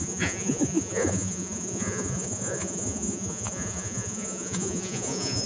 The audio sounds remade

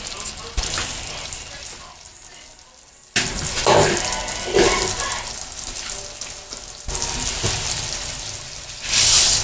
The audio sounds recorded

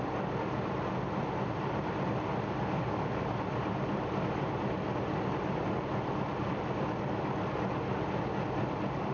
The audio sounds recorded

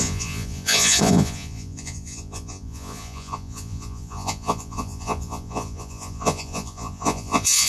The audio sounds remade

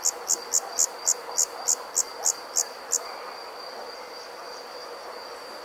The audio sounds recorded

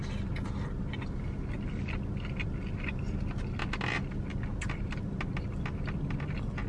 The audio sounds recorded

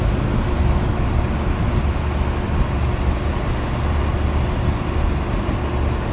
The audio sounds recorded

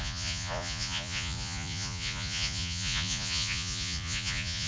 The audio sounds remade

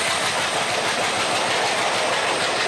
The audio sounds recorded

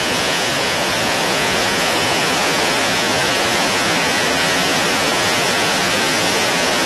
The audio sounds remade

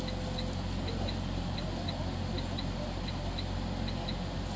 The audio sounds recorded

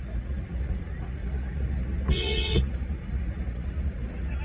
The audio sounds remade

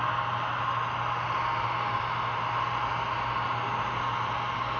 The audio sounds recorded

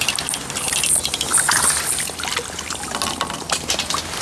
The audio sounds recorded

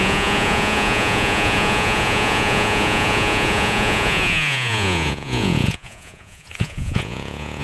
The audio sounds remade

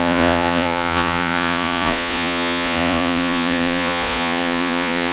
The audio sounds remade